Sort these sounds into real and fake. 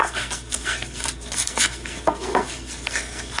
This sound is fake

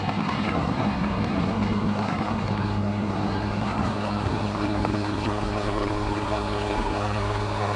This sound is fake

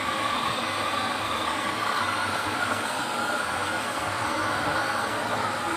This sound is fake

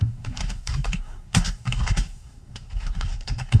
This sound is fake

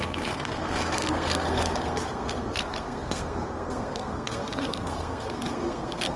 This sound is fake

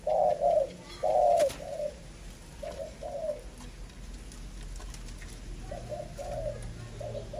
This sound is real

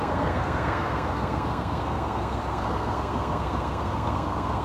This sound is fake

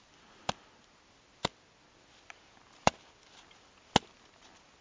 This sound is real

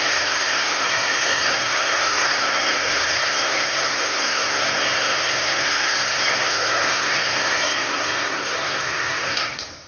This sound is fake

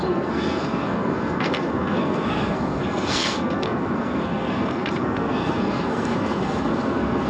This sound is fake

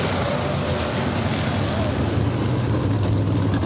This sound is real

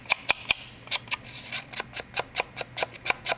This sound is real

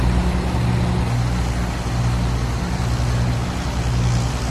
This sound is real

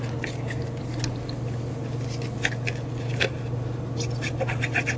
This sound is real